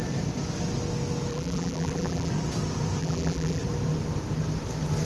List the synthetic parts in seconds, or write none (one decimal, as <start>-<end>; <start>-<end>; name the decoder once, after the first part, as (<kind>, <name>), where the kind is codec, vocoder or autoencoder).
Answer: 1.3-2.3 (vocoder, BigVGAN v2); 3.0-3.6